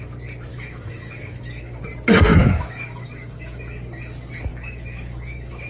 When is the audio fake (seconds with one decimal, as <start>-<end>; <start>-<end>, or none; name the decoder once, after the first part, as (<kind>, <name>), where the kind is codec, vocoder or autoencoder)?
0.5-1.8 (autoencoder, DAC-VAE); 2.3-3.6; 4.5-5.7